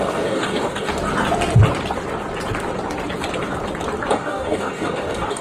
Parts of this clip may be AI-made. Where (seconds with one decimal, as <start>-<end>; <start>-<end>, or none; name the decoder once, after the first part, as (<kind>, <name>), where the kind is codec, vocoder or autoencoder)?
0.0-0.9 (codec, DAC); 4.1-5.4